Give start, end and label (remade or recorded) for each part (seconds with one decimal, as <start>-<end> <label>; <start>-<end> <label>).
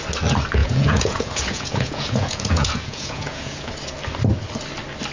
0.0-0.6 recorded; 0.6-3.7 remade; 3.7-5.1 recorded